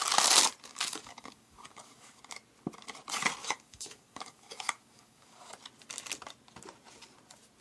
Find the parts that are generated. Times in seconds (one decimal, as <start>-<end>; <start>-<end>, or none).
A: 0.7-2.2; 3.4-5.5